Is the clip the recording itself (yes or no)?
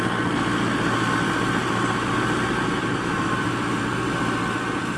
yes